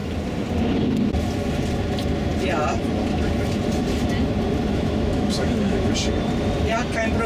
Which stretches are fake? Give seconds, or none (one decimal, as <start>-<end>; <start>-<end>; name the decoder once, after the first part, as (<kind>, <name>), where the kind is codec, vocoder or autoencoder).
4.7-5.9 (autoencoder, DAC-VAE)